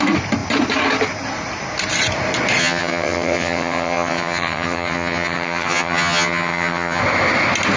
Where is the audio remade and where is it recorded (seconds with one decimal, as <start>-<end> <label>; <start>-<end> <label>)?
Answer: 0.0-2.6 recorded; 2.6-7.0 remade; 7.0-7.8 recorded